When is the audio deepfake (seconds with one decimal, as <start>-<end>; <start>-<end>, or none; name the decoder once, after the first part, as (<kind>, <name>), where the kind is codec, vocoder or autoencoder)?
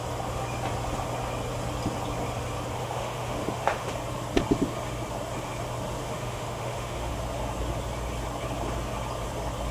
2.8-3.9 (autoencoder, DAC-VAE); 6.0-7.1